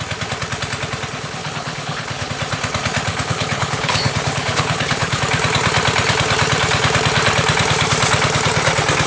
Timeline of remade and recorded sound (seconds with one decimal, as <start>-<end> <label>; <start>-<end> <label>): 0.0-1.4 recorded; 1.4-2.3 remade; 2.3-3.1 recorded; 3.1-5.2 remade; 5.2-9.1 recorded